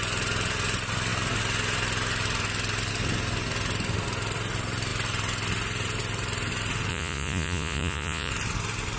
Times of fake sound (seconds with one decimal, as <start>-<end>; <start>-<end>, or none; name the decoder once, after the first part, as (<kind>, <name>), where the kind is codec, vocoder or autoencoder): 6.9-8.3 (vocoder, Vocos)